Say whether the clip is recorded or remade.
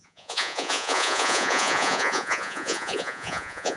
remade